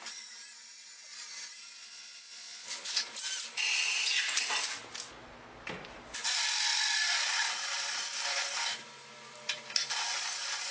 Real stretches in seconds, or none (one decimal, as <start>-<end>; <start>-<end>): 0.0-1.8; 3.0-10.7